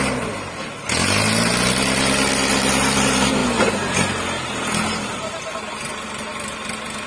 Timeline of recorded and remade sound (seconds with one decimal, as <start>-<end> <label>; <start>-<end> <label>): 0.0-7.1 recorded